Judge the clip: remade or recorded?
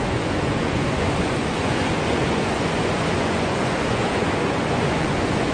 remade